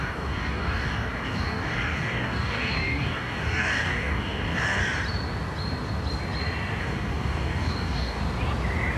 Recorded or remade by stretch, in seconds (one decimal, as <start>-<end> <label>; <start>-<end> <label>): 0.0-4.8 remade; 4.8-6.8 recorded; 6.8-8.2 remade; 8.2-9.0 recorded